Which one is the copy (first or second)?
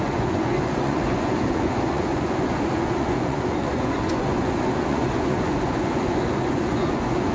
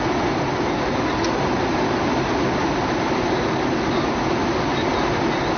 first